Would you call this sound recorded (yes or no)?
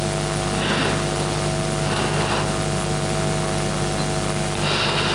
yes